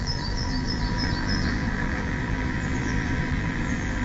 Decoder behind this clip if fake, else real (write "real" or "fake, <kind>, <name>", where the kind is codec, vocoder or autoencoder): fake, vocoder, BigVGAN v2